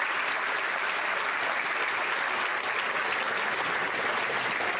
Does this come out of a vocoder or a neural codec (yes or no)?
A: no